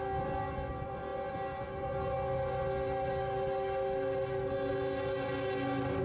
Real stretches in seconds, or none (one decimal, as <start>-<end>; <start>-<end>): 0.0-6.0